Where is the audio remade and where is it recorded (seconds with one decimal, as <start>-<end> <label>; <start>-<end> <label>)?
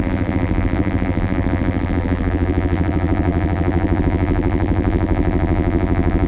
0.0-6.3 remade